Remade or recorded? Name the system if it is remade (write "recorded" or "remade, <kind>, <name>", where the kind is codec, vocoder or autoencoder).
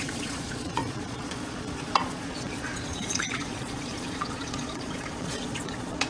remade, vocoder, Vocos